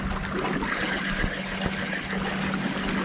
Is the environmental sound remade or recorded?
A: recorded